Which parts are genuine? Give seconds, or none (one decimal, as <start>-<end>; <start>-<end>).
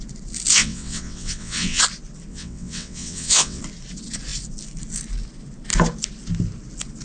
0.0-0.5; 1.8-2.3; 3.6-7.0